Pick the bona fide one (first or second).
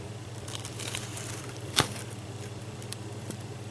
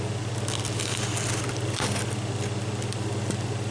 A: second